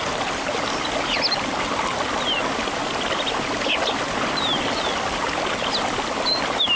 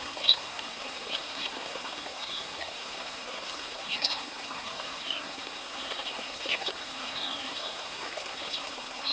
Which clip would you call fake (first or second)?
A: second